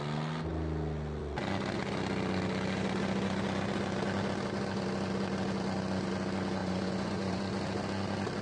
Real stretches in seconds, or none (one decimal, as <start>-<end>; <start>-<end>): 0.0-6.6; 7.4-8.4